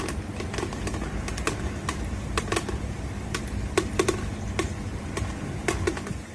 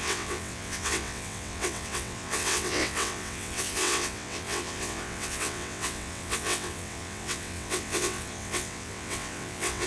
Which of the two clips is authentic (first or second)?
first